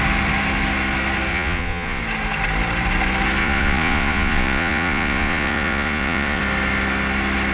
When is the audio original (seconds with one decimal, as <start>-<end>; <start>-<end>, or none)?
0.0-1.3; 2.0-3.4; 6.4-7.5